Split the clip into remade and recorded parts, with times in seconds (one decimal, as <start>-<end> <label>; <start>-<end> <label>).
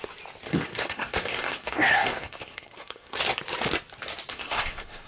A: 0.0-0.5 recorded; 0.5-3.2 remade; 3.2-4.3 recorded; 4.3-5.1 remade